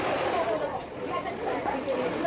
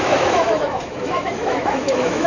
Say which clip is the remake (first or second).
second